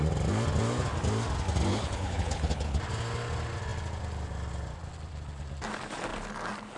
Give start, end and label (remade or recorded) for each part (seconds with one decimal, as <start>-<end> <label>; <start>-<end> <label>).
0.0-1.7 recorded; 1.7-2.8 remade; 2.8-6.8 recorded